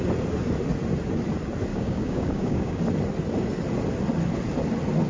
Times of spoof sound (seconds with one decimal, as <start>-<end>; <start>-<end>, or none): 1.7-2.8